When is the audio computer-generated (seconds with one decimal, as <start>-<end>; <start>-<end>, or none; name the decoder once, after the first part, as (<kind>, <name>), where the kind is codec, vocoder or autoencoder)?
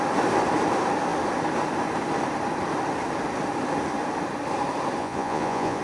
5.0-5.8 (vocoder, Vocos)